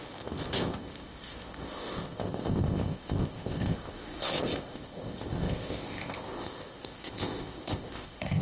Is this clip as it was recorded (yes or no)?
no